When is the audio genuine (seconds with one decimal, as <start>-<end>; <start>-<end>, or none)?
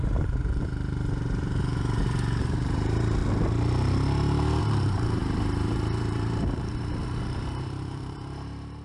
3.2-4.6